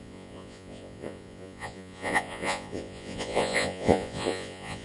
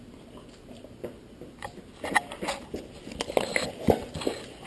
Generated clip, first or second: first